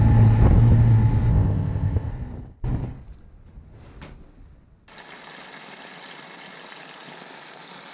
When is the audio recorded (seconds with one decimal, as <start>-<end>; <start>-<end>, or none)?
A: 0.0-1.3; 2.1-7.9